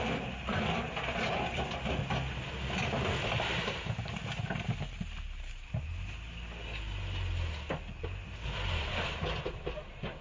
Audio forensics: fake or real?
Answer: real